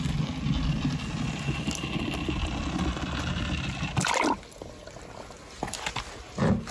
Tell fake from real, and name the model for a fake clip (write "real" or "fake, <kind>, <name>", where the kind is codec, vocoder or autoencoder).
real